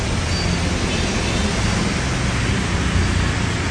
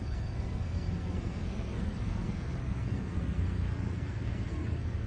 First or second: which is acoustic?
first